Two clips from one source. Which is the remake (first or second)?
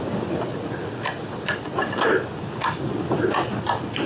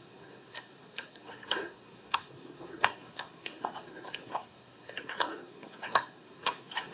second